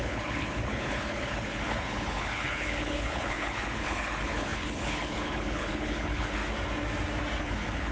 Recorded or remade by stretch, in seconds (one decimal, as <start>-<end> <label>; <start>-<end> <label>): 0.0-6.4 remade; 6.4-7.4 recorded; 7.4-7.9 remade